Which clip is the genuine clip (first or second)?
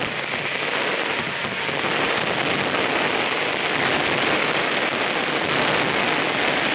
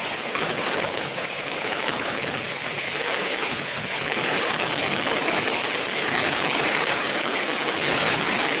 first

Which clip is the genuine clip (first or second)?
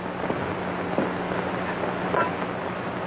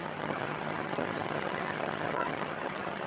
first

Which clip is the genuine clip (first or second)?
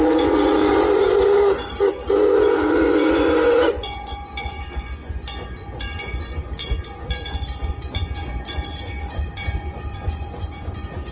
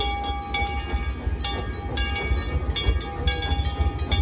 second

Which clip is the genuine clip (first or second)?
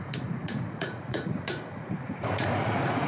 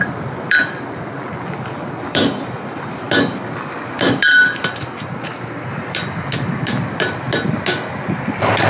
second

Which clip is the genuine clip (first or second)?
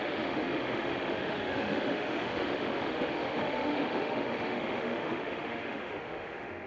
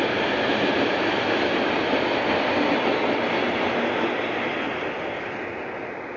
second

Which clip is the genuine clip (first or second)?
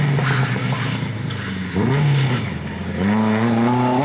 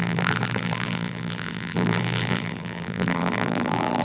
first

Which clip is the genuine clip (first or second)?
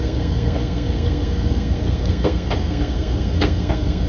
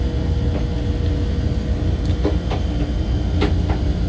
second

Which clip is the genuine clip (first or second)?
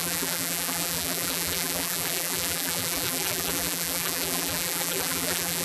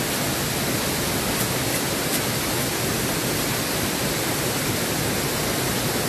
second